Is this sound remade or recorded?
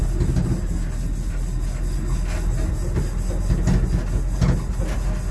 recorded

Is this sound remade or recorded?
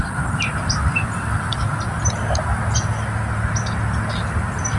recorded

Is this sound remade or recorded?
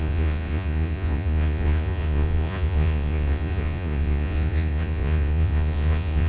remade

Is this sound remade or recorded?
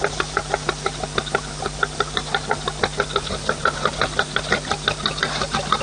recorded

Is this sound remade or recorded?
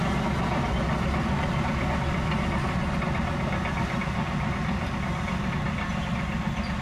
recorded